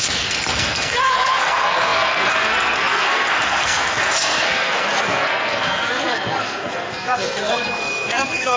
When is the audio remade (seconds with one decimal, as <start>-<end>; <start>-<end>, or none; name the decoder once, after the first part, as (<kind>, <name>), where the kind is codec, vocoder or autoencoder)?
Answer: 0.0-8.6 (codec, SNAC)